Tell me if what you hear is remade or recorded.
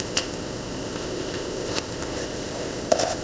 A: remade